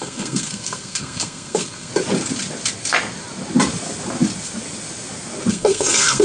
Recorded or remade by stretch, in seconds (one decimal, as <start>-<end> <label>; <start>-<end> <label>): 0.0-1.9 remade; 1.9-5.5 recorded; 5.5-6.2 remade